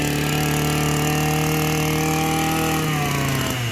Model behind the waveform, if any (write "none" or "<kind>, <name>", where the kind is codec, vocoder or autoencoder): none